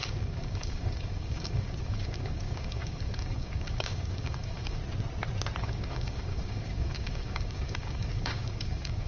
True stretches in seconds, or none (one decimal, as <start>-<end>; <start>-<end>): 4.8-5.6